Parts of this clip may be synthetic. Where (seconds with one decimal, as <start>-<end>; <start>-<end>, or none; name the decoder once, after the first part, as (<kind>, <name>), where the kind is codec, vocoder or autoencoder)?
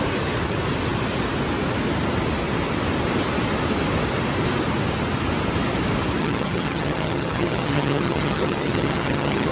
6.2-9.5 (vocoder, HiFi-GAN)